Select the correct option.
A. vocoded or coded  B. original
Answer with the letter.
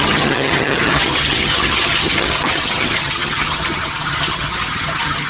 A